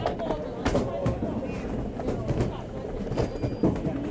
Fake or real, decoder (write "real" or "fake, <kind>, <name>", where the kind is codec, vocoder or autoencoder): real